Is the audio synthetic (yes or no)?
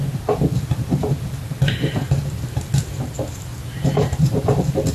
no